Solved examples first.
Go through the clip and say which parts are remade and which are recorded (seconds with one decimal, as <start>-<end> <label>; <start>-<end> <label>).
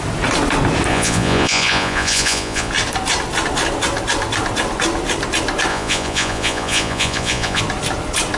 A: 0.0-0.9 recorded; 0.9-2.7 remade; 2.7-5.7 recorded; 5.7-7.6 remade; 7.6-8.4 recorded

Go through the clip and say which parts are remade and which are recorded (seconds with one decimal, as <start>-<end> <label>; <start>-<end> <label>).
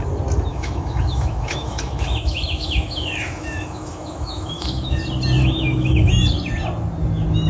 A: 0.0-0.5 recorded; 0.5-5.0 remade; 5.0-5.4 recorded; 5.4-6.1 remade; 6.1-7.5 recorded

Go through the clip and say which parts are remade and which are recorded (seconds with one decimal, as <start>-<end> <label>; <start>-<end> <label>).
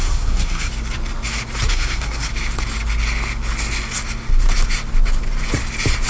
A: 0.0-0.7 remade; 0.7-1.7 recorded; 1.7-2.3 remade; 2.3-6.1 recorded